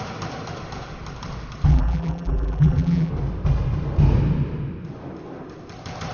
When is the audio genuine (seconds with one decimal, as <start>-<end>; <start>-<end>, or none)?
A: 0.0-1.7; 3.1-6.1